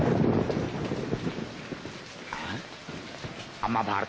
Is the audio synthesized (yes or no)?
no